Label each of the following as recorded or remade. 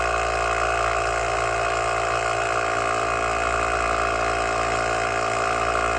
recorded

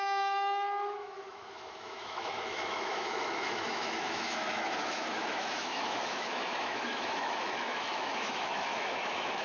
remade